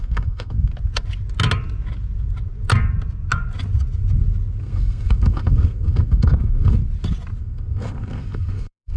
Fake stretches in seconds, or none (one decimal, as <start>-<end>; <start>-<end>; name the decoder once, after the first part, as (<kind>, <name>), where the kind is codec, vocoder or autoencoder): 0.0-0.7 (codec, SNAC); 4.6-6.8; 7.4-9.0